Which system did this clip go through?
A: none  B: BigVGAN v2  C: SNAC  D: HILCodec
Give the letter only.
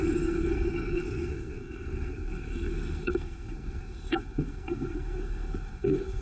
C